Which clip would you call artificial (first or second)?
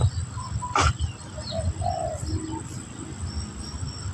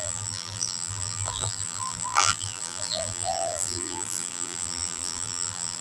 second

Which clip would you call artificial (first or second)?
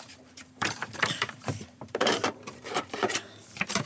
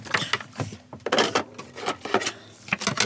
first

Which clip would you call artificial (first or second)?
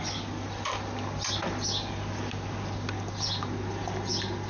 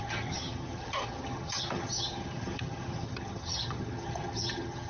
second